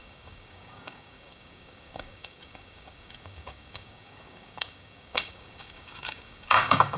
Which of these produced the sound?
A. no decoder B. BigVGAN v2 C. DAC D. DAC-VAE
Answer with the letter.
C